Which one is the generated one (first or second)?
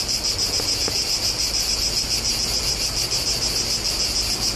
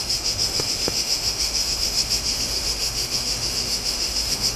second